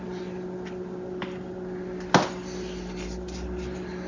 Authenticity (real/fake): real